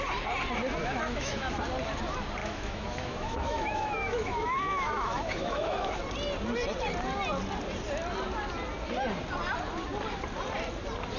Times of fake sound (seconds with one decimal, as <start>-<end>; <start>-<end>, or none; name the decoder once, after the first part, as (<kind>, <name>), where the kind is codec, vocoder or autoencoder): 0.8-1.6 (autoencoder, DAC-VAE); 2.4-6.0